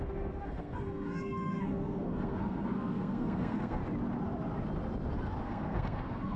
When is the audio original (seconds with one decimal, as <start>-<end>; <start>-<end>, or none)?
3.8-5.4